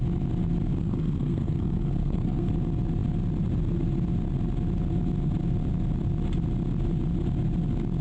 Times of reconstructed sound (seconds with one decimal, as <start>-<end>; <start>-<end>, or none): 0.8-2.5